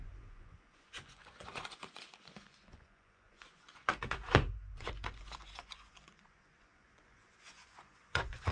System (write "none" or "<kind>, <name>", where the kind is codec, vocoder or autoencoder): vocoder, Vocos